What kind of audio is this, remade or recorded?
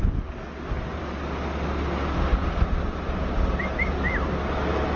recorded